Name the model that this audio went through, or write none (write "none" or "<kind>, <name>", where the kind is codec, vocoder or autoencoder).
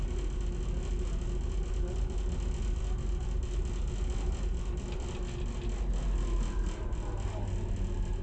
none